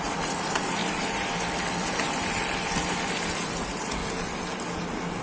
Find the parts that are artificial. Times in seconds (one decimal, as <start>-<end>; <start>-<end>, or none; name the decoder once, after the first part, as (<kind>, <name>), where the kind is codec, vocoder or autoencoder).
0.0-0.8 (vocoder, Vocos); 3.6-4.0